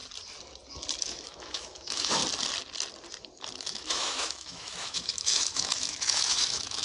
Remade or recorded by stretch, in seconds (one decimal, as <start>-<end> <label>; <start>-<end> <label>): 0.0-1.0 recorded; 1.0-2.2 remade; 2.2-3.6 recorded; 3.6-6.8 remade